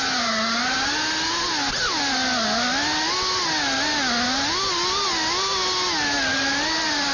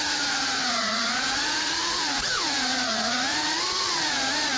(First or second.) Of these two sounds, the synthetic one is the second